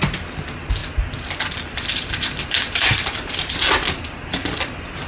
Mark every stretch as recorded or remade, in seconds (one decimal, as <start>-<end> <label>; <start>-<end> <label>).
0.0-1.9 recorded; 1.9-3.6 remade; 3.6-5.1 recorded